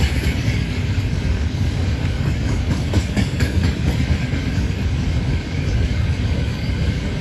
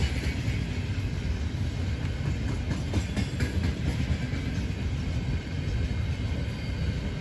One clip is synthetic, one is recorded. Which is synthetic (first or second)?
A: first